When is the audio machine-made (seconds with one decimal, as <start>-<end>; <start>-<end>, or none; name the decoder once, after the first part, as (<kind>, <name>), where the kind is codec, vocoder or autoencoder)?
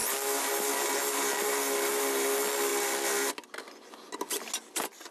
none